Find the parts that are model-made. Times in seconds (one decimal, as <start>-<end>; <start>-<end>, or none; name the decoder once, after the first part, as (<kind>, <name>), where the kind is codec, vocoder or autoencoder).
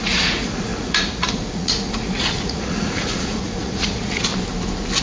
0.0-4.3 (vocoder, Vocos)